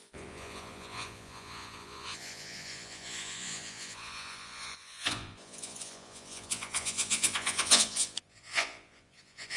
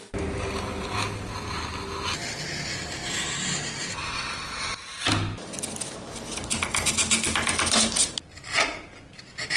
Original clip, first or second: second